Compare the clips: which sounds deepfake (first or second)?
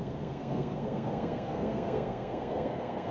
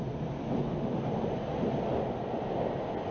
first